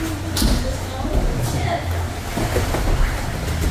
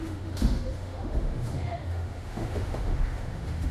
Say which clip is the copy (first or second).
second